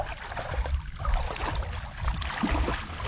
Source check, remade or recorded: remade